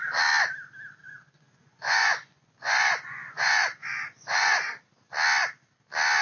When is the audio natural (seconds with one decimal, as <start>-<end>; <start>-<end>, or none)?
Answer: 0.0-1.0; 4.7-6.2